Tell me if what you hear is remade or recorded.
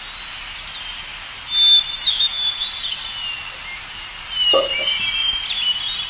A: recorded